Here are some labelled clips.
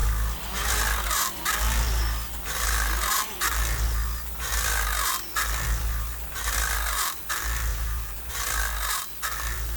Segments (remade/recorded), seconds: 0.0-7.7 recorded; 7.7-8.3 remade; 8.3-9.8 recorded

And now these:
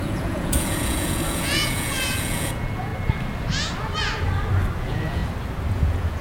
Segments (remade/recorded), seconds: 0.0-2.9 remade; 2.9-4.8 recorded; 4.8-5.2 remade; 5.2-5.7 recorded; 5.7-6.2 remade

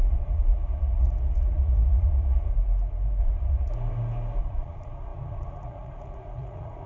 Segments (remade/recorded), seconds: 0.0-2.5 remade; 2.5-3.2 recorded; 3.2-3.7 remade; 3.7-4.4 recorded; 4.4-6.9 remade

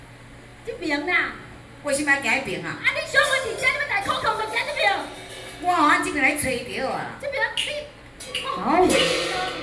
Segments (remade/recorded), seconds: 0.0-9.6 recorded

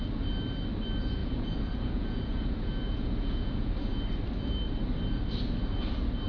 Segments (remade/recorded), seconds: 0.0-1.2 recorded; 1.2-3.7 remade; 3.7-6.3 recorded

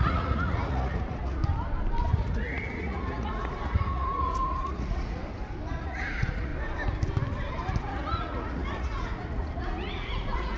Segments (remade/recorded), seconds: 0.0-1.4 remade; 1.4-2.1 recorded; 2.1-5.2 remade; 5.2-5.8 recorded; 5.8-6.5 remade; 6.5-7.8 recorded; 7.8-10.6 remade

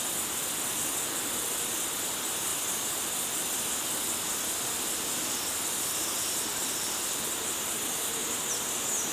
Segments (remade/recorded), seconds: 0.0-9.1 recorded

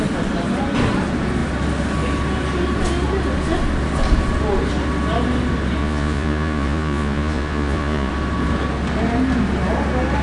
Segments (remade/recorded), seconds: 0.0-5.8 recorded; 5.8-8.1 remade; 8.1-10.2 recorded